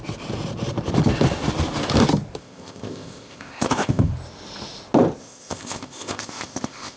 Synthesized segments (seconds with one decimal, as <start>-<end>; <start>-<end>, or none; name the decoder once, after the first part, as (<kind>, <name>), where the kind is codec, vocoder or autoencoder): 2.4-4.1 (codec, ZipCodec); 5.2-7.0